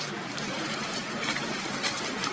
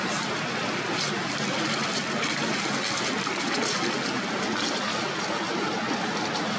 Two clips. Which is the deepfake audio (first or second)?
first